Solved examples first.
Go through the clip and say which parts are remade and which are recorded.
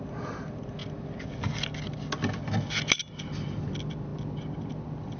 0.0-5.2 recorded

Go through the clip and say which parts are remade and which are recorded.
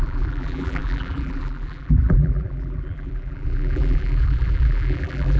0.0-5.4 remade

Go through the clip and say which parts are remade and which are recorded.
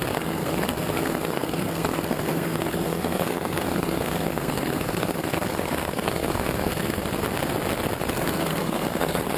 0.0-7.0 remade; 7.0-8.1 recorded; 8.1-9.4 remade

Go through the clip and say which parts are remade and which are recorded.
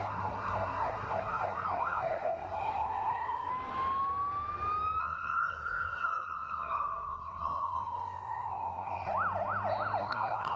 0.0-3.5 remade; 3.5-5.0 recorded; 5.0-9.1 remade; 9.1-10.0 recorded; 10.0-10.6 remade